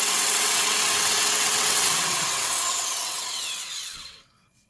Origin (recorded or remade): remade